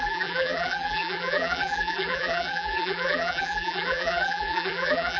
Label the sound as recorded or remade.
remade